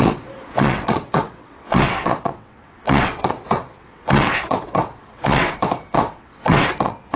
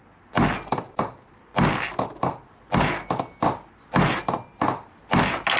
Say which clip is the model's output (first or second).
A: first